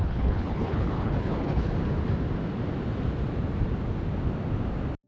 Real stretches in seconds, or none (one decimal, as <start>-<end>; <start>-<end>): 1.7-5.1